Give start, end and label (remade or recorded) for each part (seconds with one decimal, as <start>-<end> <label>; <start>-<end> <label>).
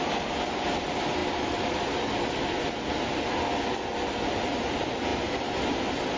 0.0-5.1 recorded; 5.1-5.8 remade; 5.8-6.2 recorded